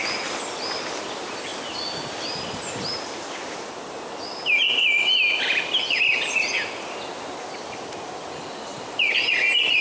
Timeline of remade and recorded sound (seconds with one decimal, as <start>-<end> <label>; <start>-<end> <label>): 0.0-9.8 recorded

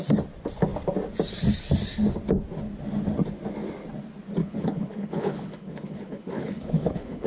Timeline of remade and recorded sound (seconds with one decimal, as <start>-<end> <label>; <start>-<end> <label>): 0.0-4.4 recorded; 4.4-7.3 remade

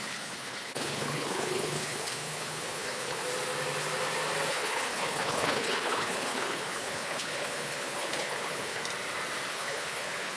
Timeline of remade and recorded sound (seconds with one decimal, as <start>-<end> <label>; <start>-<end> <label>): 0.0-3.2 remade; 3.2-4.5 recorded; 4.5-8.8 remade; 8.8-9.5 recorded; 9.5-10.4 remade

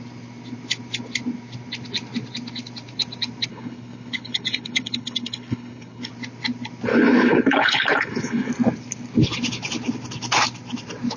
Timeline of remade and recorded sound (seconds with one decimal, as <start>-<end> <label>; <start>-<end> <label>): 0.0-3.5 recorded; 3.5-6.1 remade; 6.1-6.9 recorded; 6.9-8.5 remade; 8.5-11.2 recorded

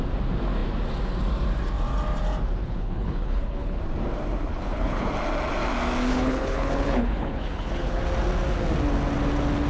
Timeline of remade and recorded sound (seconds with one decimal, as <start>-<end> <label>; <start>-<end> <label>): 0.0-2.6 recorded; 2.6-3.8 remade; 3.8-4.5 recorded; 4.5-5.1 remade; 5.1-6.1 recorded; 6.1-8.0 remade; 8.0-9.7 recorded